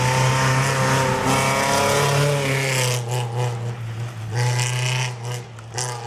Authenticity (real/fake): real